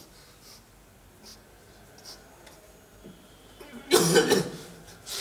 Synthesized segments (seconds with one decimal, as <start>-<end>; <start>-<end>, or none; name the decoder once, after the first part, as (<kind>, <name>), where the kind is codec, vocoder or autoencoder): none